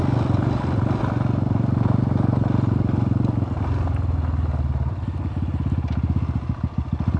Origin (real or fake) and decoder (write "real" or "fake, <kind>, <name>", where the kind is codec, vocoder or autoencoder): real